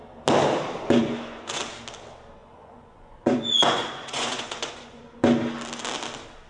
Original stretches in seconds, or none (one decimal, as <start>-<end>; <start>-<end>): 0.0-1.0; 1.6-2.4; 5.0-6.5